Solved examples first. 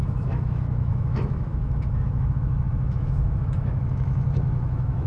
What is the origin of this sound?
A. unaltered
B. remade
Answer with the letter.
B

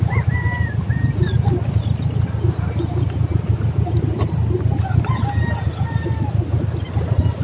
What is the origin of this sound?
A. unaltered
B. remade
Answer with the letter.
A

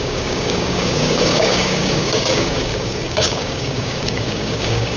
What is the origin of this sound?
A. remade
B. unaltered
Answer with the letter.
A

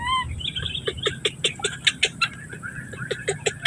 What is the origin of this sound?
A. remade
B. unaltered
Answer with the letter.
B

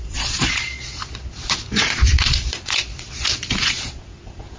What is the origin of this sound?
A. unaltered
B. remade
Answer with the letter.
B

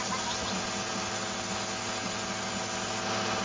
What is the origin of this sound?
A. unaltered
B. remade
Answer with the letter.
A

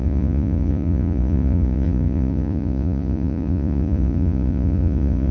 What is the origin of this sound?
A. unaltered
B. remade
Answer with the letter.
B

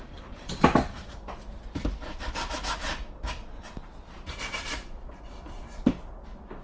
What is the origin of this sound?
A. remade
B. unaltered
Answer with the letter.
B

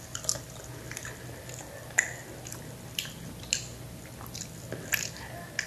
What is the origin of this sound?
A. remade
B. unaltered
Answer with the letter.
B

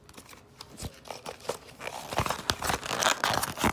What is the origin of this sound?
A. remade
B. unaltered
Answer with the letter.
B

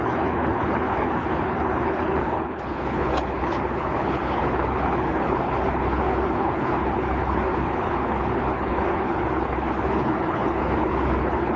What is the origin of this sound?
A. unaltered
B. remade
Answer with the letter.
B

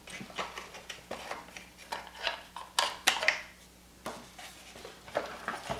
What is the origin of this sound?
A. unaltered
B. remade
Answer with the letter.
A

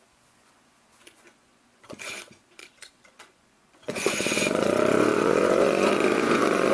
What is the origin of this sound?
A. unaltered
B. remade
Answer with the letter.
B